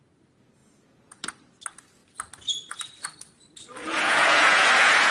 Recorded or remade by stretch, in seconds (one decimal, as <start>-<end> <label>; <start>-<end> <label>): 0.0-0.6 recorded; 0.6-1.3 remade; 1.3-3.8 recorded; 3.8-5.1 remade